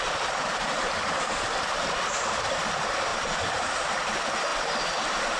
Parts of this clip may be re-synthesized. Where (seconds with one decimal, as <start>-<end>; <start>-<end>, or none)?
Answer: 0.4-0.9; 3.1-3.7